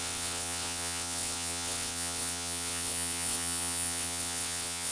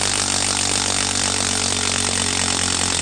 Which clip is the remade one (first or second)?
first